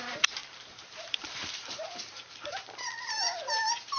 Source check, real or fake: fake